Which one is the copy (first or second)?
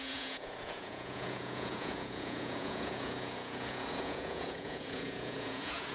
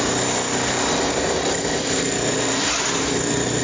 first